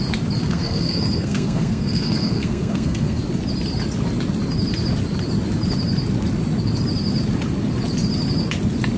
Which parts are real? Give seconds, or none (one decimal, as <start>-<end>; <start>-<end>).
0.0-0.5; 3.2-9.0